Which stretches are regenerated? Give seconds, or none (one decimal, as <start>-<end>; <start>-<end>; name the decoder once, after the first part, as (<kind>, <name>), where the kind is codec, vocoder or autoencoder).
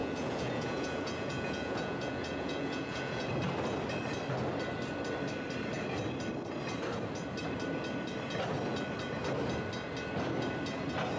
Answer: 0.0-3.3 (vocoder, Vocos)